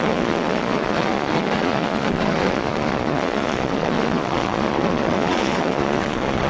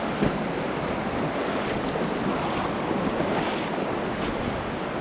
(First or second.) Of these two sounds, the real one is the second